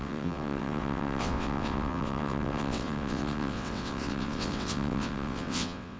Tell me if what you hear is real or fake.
fake